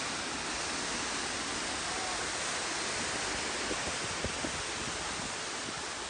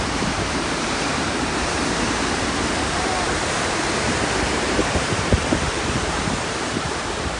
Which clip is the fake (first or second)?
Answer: second